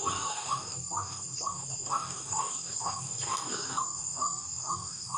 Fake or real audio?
fake